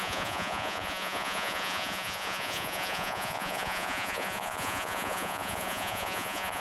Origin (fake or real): fake